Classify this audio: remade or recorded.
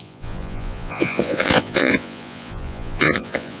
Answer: remade